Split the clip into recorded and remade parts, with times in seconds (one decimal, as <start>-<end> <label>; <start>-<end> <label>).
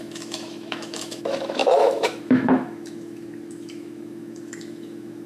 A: 0.0-5.3 remade